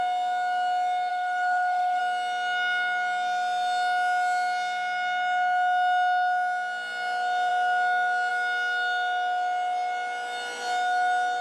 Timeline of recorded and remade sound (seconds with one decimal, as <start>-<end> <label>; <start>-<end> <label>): 0.0-1.1 recorded; 1.1-2.0 remade; 2.0-11.4 recorded